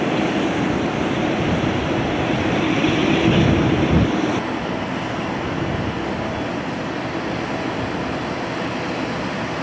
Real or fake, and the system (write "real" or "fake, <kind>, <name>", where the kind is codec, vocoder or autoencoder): real